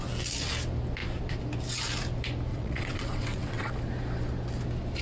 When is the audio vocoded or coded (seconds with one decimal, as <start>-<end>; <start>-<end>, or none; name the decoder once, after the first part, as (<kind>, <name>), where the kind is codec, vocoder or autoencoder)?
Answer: 2.5-3.7 (vocoder, WaveNeXt)